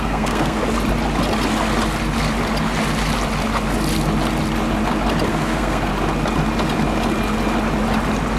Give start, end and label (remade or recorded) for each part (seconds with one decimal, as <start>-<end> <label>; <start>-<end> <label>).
0.0-0.6 remade; 0.6-5.3 recorded; 5.3-5.9 remade; 5.9-8.4 recorded